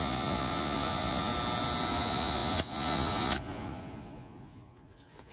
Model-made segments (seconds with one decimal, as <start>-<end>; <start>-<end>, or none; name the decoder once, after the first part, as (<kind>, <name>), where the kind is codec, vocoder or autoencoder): 0.0-1.3 (vocoder, Vocos); 1.9-5.3